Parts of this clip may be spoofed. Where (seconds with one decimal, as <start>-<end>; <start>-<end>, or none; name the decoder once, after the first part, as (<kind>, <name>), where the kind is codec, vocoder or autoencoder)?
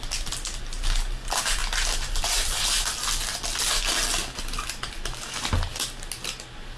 none